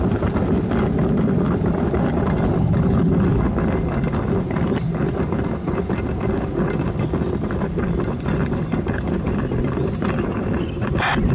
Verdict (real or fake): real